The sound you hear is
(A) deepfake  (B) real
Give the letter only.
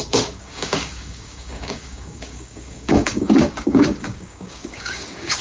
A